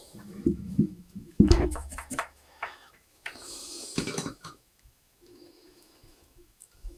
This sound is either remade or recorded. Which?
remade